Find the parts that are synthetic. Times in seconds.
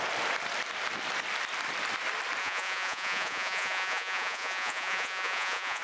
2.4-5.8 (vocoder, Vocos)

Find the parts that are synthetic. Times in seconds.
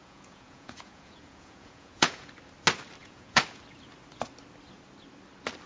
0.0-2.3 (vocoder, Vocos); 3.0-3.6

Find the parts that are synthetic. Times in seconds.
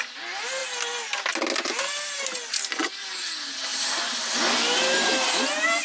none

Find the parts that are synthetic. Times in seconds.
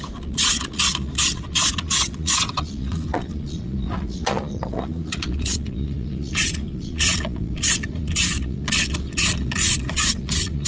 0.0-10.7 (vocoder, Vocos)